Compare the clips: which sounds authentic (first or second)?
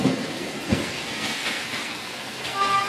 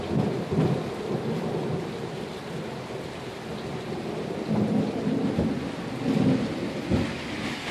second